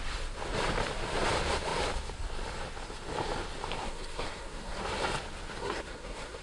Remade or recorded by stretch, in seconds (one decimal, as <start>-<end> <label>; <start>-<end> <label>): 0.0-3.8 recorded; 3.8-4.8 remade; 4.8-5.6 recorded; 5.6-6.4 remade